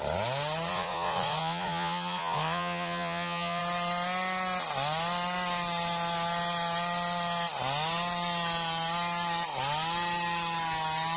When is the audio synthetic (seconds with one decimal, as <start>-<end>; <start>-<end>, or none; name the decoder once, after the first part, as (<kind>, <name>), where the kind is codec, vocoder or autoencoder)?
0.7-3.6 (vocoder, Vocos)